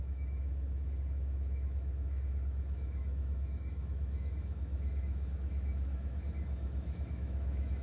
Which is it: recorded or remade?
remade